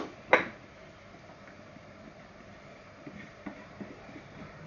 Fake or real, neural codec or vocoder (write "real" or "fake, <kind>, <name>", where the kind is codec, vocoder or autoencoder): real